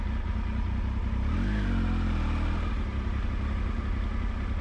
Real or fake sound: real